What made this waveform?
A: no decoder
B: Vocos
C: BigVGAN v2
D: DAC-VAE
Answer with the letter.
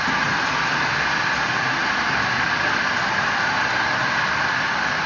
A